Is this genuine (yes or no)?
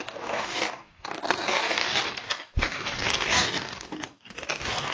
no